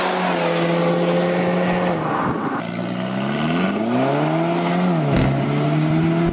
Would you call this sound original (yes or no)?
yes